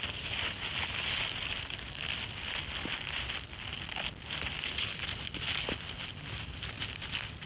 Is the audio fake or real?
real